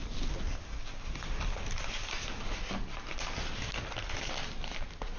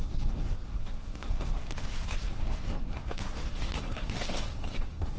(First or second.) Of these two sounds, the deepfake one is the second